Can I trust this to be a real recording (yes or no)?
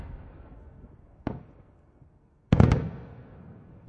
no